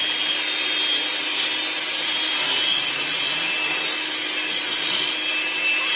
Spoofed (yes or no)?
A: no